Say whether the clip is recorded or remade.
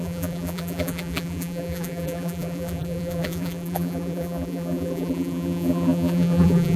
remade